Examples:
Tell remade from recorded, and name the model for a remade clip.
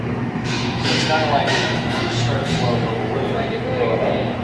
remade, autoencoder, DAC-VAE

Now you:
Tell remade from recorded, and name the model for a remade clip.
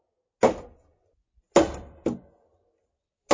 recorded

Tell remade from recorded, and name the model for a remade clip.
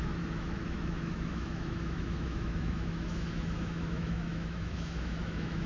remade, autoencoder, DAC-VAE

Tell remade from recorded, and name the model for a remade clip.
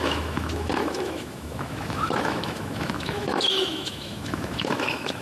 remade, autoencoder, DAC-VAE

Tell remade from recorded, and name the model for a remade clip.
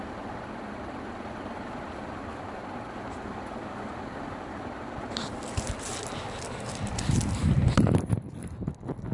recorded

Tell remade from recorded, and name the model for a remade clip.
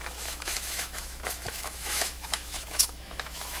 remade, autoencoder, DAC-VAE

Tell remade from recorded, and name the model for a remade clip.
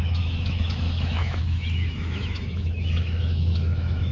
remade, autoencoder, DAC-VAE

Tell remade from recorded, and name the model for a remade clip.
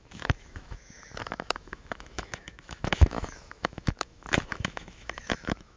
remade, autoencoder, DAC-VAE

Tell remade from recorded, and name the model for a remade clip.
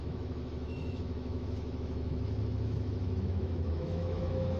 remade, autoencoder, DAC-VAE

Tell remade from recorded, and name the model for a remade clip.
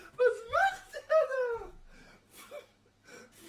remade, autoencoder, DAC-VAE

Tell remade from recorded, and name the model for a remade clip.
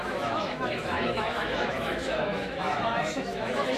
remade, autoencoder, DAC-VAE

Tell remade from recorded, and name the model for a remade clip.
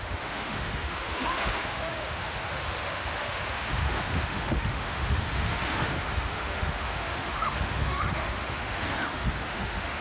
remade, autoencoder, DAC-VAE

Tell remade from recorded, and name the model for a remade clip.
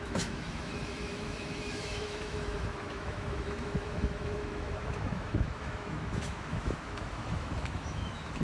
remade, autoencoder, DAC-VAE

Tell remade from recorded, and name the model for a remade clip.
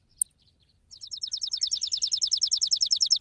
recorded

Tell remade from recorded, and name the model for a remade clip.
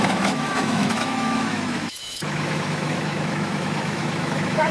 remade, autoencoder, DAC-VAE